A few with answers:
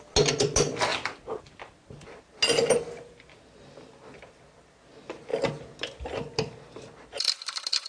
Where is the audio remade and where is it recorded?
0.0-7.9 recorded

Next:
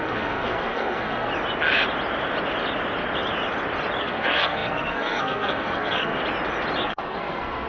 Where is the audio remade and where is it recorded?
0.0-1.3 remade; 1.3-4.0 recorded; 4.0-6.1 remade; 6.1-6.8 recorded; 6.8-7.7 remade

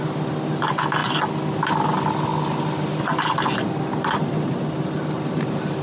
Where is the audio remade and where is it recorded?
0.0-5.8 recorded

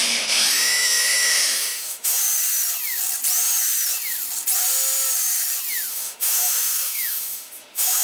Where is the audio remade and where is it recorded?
0.0-2.2 remade; 2.2-5.9 recorded; 5.9-8.0 remade

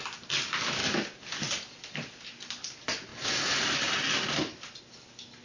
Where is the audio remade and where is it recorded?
0.0-5.4 recorded

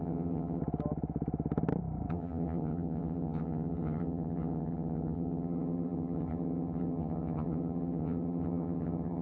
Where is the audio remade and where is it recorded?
0.0-0.6 remade; 0.6-2.1 recorded; 2.1-9.2 remade